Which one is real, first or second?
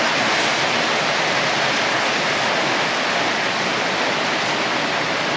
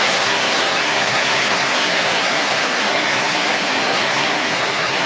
first